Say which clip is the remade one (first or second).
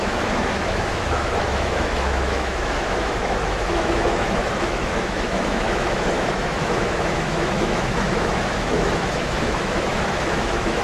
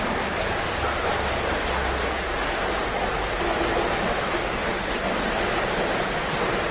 first